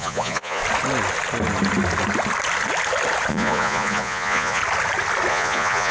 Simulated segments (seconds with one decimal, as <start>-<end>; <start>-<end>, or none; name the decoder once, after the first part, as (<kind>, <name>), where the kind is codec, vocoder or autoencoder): 0.0-0.6 (vocoder, Vocos); 3.3-4.6; 5.3-5.9